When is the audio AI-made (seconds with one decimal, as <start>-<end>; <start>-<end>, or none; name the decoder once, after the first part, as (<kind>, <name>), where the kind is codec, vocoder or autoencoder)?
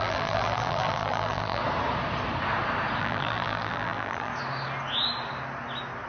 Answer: 0.0-1.6 (vocoder, BigVGAN v2); 3.0-4.3